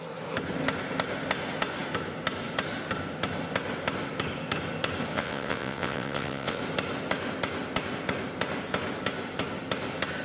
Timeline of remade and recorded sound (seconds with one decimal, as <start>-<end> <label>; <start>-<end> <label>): 0.0-5.1 recorded; 5.1-6.6 remade; 6.6-10.2 recorded